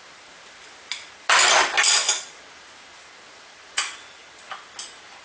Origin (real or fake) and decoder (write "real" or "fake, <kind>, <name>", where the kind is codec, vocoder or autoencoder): real